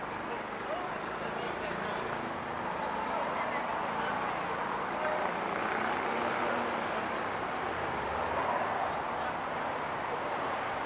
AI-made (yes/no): no